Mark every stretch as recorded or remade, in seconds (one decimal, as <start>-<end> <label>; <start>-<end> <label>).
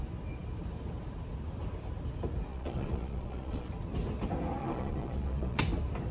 0.0-2.5 recorded; 2.5-3.7 remade; 3.7-4.6 recorded; 4.6-5.6 remade; 5.6-6.1 recorded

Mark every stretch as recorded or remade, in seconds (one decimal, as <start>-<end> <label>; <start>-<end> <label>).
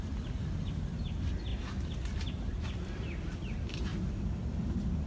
0.0-1.5 recorded; 1.5-2.1 remade; 2.1-5.1 recorded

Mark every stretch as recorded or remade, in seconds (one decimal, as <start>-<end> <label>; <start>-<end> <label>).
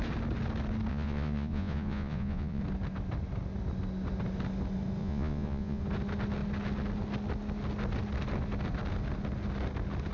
0.0-0.9 recorded; 0.9-2.6 remade; 2.6-5.0 recorded; 5.0-5.8 remade; 5.8-10.1 recorded